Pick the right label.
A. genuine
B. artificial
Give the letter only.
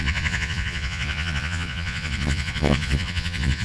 B